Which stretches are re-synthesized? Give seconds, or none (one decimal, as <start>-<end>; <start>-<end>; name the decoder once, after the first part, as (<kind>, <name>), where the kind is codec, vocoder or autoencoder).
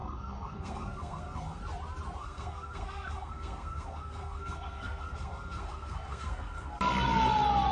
0.0-1.6 (codec, SNAC); 2.2-6.8